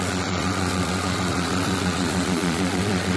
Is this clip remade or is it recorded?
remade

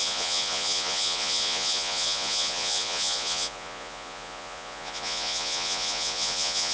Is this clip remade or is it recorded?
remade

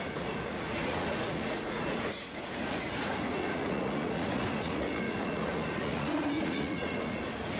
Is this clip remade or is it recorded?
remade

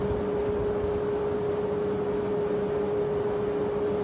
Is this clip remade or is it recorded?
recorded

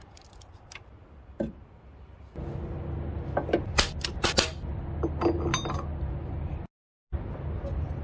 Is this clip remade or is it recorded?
recorded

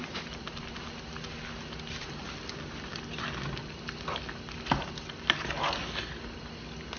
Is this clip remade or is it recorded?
recorded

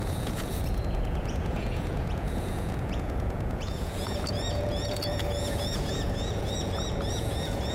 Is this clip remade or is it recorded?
remade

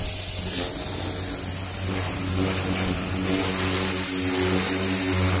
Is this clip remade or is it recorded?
recorded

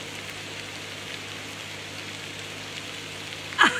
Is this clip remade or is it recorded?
recorded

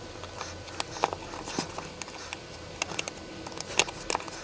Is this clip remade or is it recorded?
recorded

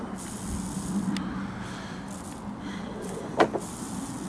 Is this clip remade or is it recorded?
recorded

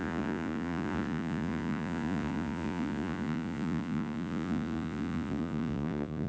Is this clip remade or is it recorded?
remade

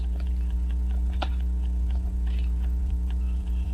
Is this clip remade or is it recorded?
remade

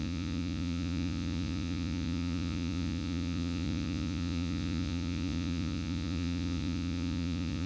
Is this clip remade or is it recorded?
remade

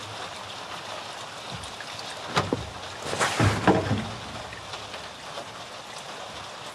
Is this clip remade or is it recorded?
recorded